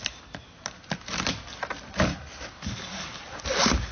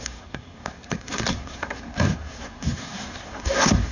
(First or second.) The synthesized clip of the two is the second